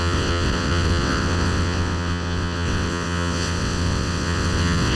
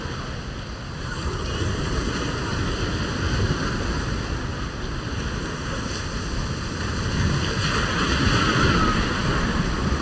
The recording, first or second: second